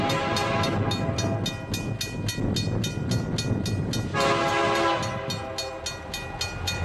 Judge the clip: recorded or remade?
recorded